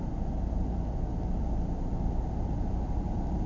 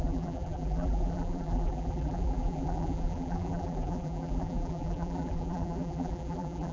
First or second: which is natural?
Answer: first